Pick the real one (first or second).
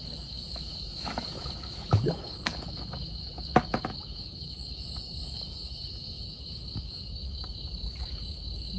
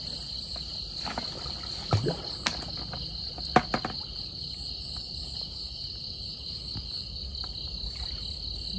second